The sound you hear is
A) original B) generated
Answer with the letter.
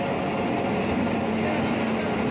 A